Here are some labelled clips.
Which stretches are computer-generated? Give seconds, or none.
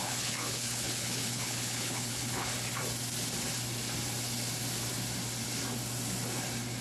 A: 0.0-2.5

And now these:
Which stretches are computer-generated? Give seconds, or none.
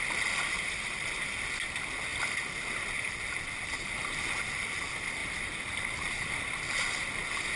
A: none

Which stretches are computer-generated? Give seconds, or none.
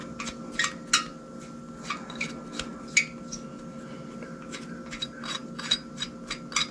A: none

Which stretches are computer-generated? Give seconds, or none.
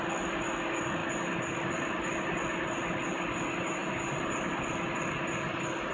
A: none